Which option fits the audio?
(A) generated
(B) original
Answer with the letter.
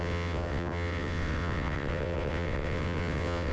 A